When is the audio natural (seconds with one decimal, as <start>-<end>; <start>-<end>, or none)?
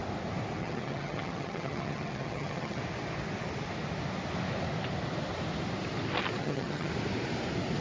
0.0-0.6; 2.8-6.4; 6.9-7.8